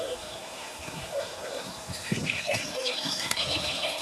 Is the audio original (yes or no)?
no